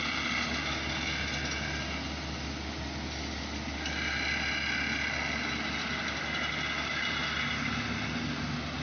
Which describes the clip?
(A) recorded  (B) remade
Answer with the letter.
A